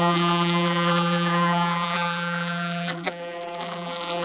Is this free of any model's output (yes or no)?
no